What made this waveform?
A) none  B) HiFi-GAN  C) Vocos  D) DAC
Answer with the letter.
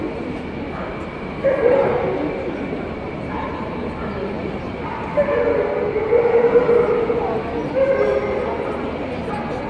A